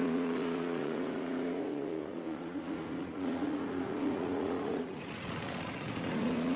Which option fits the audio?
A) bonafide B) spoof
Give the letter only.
B